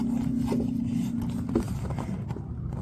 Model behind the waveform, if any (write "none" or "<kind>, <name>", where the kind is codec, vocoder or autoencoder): none